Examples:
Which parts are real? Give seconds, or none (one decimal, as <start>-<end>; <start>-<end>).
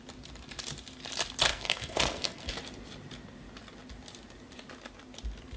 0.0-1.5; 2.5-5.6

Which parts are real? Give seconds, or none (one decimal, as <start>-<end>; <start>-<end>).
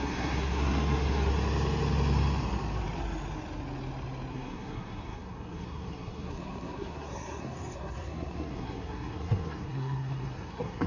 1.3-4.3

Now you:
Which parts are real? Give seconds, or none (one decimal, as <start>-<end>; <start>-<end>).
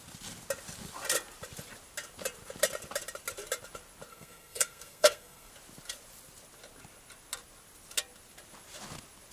0.0-4.1; 5.5-9.3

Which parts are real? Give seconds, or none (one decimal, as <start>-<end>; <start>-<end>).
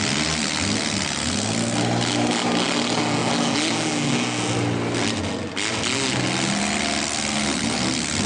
0.0-8.3